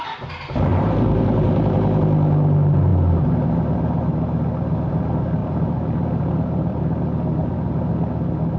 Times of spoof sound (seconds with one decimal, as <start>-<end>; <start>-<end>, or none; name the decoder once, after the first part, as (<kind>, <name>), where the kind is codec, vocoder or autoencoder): 0.7-2.0 (vocoder, BigVGAN v2); 5.4-7.0; 7.4-7.9